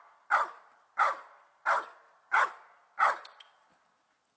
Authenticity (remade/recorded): recorded